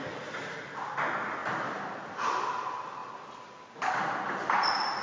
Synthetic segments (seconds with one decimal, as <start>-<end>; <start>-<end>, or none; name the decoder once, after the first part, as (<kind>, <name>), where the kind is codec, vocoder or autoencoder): none